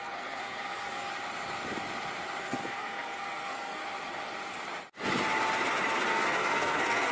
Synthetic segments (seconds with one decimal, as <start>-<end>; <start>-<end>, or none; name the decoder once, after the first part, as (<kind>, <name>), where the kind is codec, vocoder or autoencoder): 0.0-1.1 (codec, SNAC); 2.4-3.8; 6.1-7.1